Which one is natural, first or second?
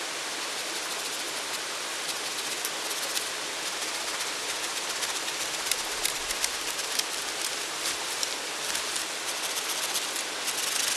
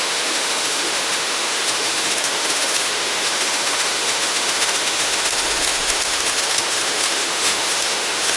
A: first